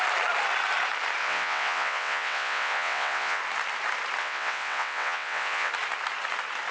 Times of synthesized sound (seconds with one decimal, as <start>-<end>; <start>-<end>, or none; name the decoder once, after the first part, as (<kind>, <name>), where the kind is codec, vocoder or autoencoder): 1.2-3.4 (vocoder, WaveNeXt); 4.2-5.7